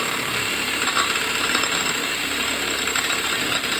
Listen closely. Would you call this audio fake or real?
fake